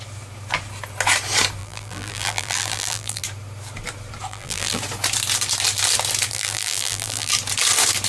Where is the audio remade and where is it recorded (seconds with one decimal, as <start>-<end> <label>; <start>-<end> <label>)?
0.0-1.6 recorded; 1.6-3.2 remade; 3.2-4.3 recorded; 4.3-4.8 remade; 4.8-6.3 recorded; 6.3-7.3 remade; 7.3-8.1 recorded